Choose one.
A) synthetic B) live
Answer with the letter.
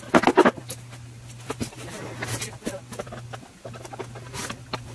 B